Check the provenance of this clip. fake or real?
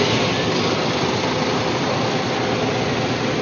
real